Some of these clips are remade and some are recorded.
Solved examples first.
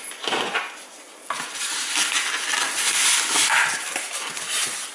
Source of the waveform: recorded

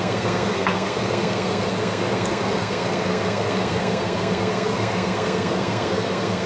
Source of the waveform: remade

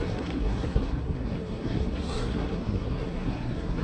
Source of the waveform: remade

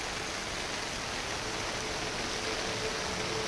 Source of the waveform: recorded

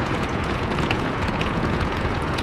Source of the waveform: remade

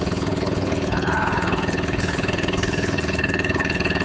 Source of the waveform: remade